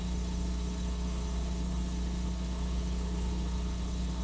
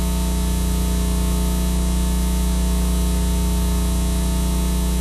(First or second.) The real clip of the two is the second